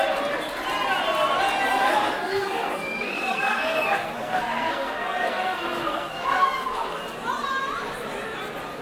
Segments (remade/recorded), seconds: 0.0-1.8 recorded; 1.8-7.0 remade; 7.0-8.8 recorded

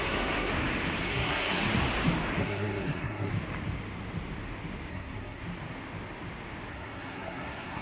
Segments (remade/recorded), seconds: 0.0-0.5 remade; 0.5-1.0 recorded; 1.0-1.6 remade; 1.6-2.4 recorded; 2.4-3.3 remade; 3.3-4.9 recorded; 4.9-5.4 remade; 5.4-6.7 recorded; 6.7-7.8 remade

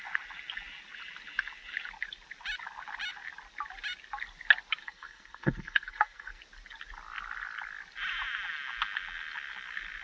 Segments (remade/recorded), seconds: 0.0-4.8 recorded; 4.8-6.4 remade; 6.4-10.0 recorded

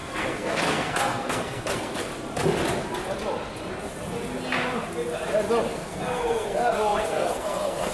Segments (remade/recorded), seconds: 0.0-2.1 remade; 2.1-5.6 recorded; 5.6-7.9 remade